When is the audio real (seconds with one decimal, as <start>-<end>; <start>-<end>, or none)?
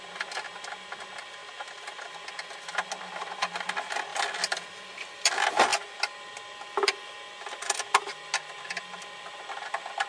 0.0-1.4; 2.2-4.1; 5.3-10.1